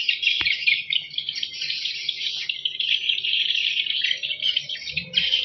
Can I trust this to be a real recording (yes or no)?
no